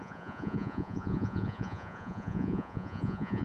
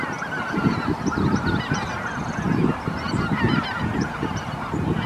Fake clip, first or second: first